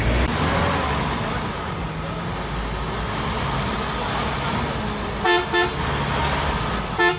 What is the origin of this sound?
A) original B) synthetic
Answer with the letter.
A